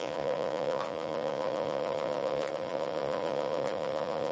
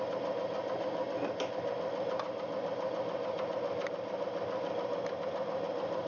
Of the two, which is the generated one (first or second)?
first